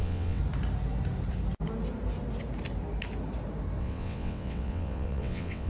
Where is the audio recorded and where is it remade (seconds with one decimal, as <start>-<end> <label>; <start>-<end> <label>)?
0.0-0.4 remade; 0.4-3.8 recorded; 3.8-5.7 remade